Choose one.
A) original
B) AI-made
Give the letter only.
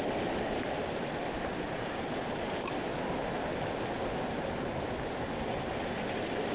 A